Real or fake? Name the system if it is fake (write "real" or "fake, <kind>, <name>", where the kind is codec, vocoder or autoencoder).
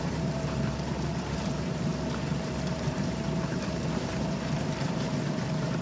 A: fake, vocoder, BigVGAN v2